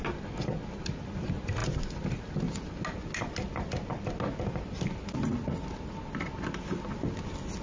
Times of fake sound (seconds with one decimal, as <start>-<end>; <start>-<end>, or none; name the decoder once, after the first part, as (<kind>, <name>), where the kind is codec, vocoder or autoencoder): none